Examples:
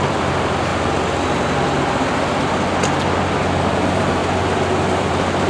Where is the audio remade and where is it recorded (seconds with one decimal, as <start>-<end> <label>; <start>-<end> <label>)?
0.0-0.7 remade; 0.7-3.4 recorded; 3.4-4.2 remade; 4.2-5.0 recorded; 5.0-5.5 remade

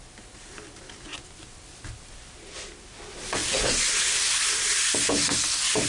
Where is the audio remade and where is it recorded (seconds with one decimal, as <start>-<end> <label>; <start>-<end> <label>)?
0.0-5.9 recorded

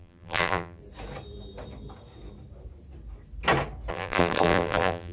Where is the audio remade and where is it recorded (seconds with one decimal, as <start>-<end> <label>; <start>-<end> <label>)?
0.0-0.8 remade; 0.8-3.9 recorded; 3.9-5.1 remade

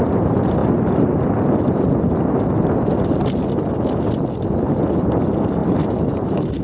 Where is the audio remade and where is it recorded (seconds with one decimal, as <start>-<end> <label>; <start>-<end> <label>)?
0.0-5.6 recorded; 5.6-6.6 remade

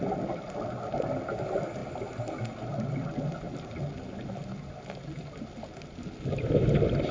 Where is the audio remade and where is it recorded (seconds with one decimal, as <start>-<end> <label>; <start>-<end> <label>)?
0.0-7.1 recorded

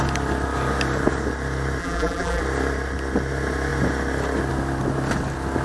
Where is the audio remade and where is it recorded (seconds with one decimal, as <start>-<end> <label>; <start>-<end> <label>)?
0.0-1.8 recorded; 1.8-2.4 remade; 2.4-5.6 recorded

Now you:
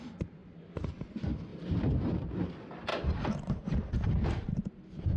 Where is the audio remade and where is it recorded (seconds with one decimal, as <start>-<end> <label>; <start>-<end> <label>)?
0.0-1.5 recorded; 1.5-2.5 remade; 2.5-2.9 recorded; 2.9-3.6 remade; 3.6-5.2 recorded